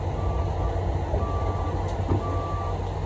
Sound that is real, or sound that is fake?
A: real